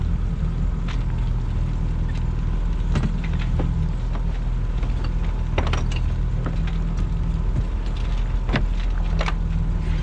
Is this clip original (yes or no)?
yes